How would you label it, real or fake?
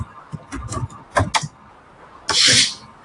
real